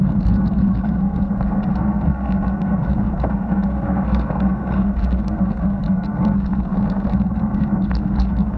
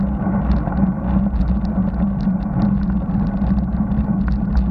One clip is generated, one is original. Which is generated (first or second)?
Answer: first